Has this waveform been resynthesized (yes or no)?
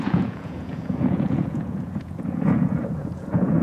yes